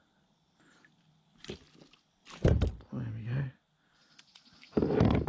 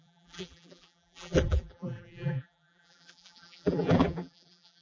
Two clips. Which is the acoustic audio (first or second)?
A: first